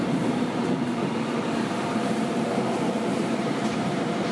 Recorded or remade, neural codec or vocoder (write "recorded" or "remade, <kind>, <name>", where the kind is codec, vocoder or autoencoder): remade, vocoder, BigVGAN v2